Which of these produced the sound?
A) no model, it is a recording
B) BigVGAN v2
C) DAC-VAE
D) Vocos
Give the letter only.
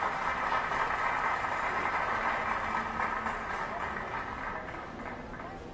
A